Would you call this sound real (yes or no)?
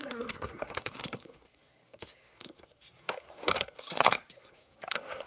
no